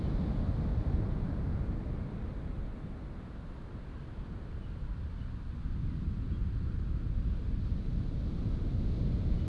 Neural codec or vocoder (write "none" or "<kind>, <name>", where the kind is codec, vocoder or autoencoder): none